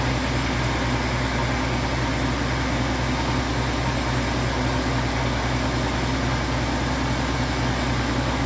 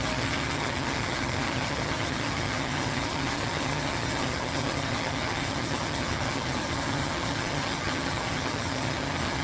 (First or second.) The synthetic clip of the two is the second